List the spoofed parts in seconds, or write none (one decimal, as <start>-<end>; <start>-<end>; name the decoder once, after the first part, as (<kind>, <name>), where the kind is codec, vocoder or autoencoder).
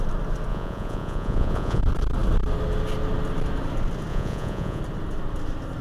0.5-1.8 (vocoder, Vocos); 4.1-4.8